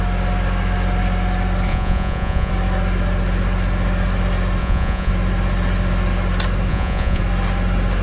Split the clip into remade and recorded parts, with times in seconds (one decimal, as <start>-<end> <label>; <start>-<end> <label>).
0.0-1.7 recorded; 1.7-2.5 remade; 2.5-4.6 recorded; 4.6-5.1 remade; 5.1-6.7 recorded; 6.7-7.2 remade; 7.2-8.0 recorded